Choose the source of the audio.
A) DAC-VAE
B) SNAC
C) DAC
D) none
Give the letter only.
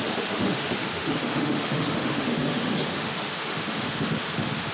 A